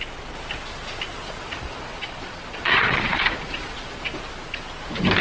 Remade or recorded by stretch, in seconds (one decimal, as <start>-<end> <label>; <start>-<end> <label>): 0.0-1.1 recorded; 1.1-4.2 remade; 4.2-5.2 recorded